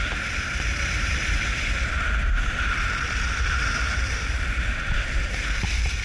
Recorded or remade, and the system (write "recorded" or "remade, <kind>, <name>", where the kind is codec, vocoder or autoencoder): remade, vocoder, BigVGAN v2